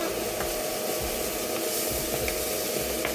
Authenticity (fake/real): real